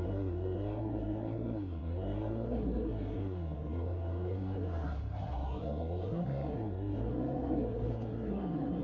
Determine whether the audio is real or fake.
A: fake